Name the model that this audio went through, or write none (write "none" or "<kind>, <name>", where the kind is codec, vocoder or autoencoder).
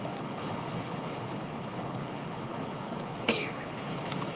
codec, HILCodec